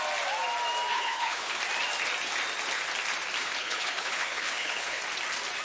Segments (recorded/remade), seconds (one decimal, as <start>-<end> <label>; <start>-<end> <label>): 0.0-0.9 recorded; 0.9-1.6 remade; 1.6-3.4 recorded; 3.4-5.0 remade; 5.0-5.6 recorded